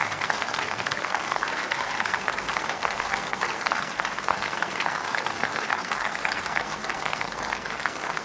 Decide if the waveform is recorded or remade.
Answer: remade